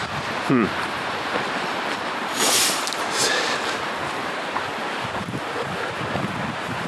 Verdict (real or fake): real